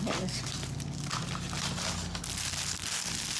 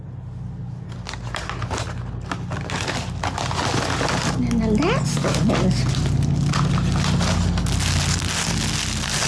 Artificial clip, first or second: first